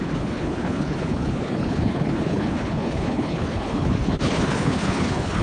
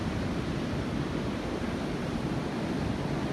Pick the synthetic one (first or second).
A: first